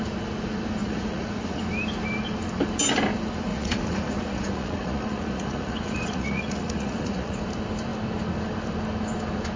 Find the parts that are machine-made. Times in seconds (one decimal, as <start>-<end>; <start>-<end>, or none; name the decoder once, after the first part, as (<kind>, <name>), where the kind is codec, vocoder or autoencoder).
0.8-1.6 (vocoder, Vocos); 3.5-7.4